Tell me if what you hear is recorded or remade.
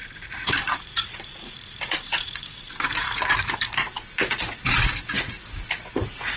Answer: remade